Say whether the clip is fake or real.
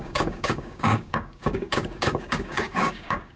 fake